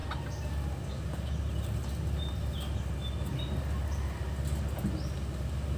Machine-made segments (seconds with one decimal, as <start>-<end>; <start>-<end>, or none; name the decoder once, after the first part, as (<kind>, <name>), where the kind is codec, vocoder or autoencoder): none